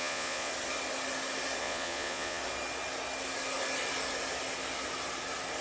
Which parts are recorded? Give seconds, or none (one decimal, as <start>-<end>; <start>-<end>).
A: 0.5-1.6; 2.4-5.6